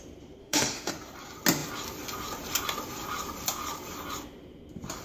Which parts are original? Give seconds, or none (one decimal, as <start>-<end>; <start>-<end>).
0.0-0.4; 0.9-5.0